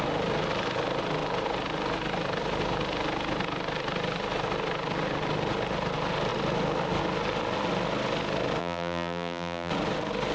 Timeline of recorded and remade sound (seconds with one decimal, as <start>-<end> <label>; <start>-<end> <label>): 0.0-8.6 recorded; 8.6-9.7 remade; 9.7-10.3 recorded